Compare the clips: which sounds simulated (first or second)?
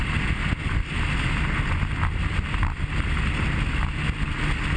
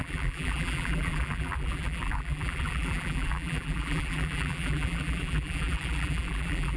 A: second